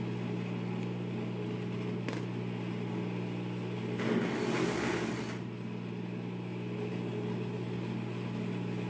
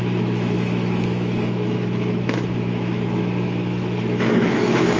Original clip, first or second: first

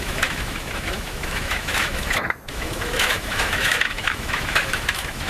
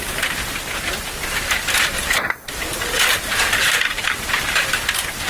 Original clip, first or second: second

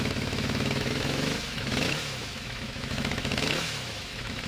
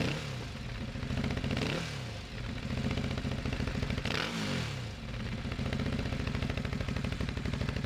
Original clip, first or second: second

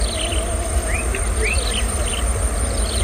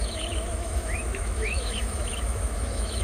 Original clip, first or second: first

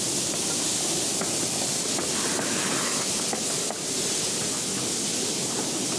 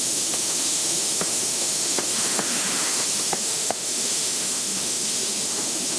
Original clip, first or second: first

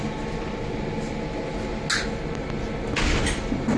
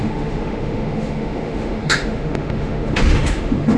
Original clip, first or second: first